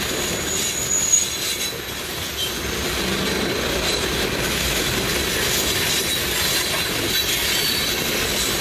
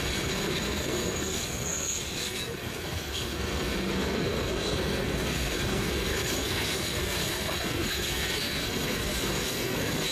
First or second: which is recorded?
first